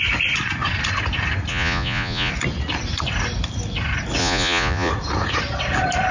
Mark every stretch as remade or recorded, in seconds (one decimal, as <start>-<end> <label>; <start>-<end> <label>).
0.0-1.5 recorded; 1.5-2.3 remade; 2.3-4.2 recorded; 4.2-4.9 remade; 4.9-6.1 recorded